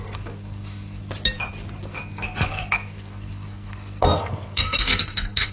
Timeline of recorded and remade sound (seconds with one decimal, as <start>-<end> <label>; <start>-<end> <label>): 0.0-1.0 remade; 1.0-1.8 recorded; 1.8-5.5 remade